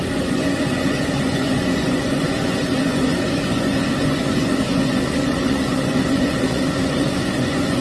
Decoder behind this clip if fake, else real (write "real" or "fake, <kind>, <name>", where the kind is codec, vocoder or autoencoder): fake, vocoder, Vocos